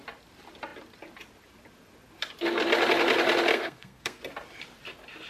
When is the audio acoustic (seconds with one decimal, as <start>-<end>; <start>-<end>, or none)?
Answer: 0.0-3.5; 4.2-5.3